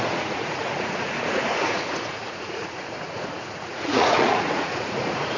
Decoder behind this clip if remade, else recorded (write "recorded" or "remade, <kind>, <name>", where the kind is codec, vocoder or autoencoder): remade, vocoder, Vocos